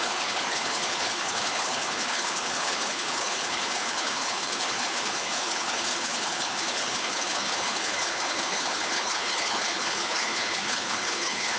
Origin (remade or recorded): remade